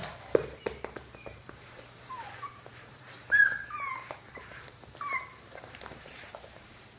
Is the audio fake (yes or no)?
yes